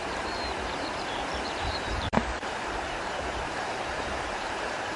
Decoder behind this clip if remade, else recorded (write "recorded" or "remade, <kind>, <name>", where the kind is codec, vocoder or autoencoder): remade, vocoder, BigVGAN v2